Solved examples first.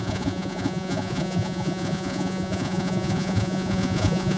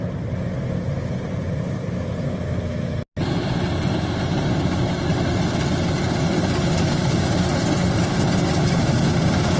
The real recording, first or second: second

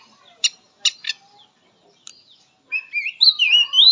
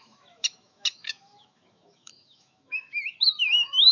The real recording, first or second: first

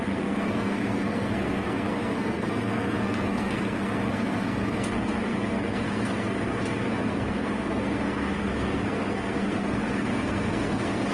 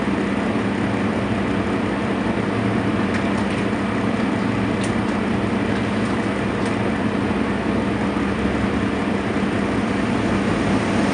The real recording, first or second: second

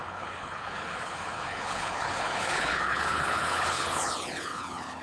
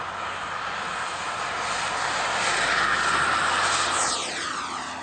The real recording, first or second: second